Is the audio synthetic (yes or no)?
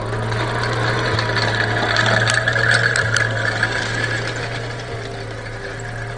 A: no